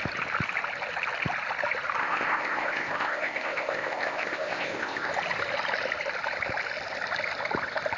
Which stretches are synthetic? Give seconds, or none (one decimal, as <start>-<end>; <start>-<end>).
2.0-5.1